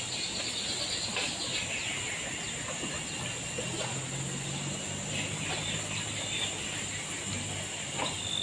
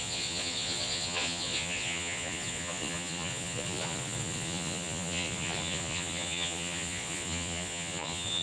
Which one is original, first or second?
first